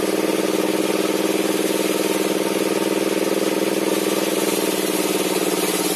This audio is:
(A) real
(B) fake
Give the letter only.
A